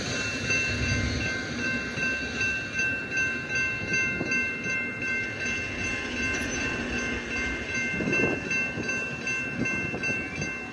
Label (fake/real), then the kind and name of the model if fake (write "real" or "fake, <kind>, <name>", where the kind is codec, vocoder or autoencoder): real